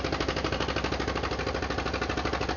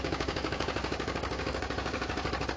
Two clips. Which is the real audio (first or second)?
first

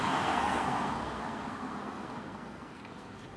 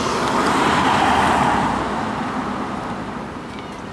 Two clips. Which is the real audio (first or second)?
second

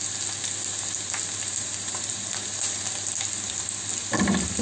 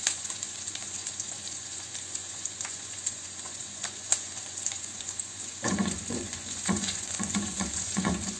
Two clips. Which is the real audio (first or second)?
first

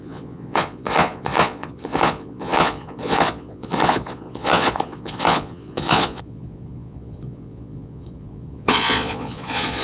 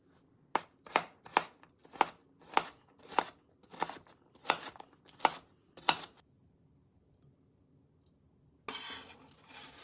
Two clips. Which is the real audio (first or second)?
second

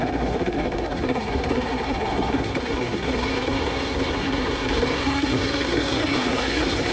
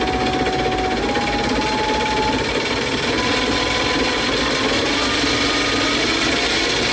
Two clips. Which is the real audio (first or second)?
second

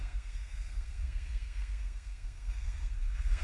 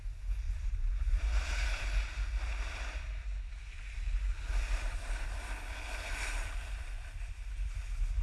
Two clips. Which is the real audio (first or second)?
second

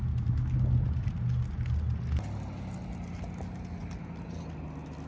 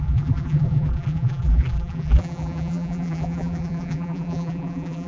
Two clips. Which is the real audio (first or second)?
first